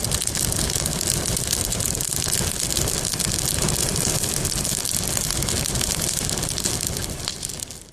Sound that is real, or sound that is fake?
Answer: real